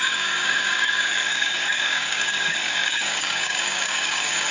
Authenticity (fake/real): fake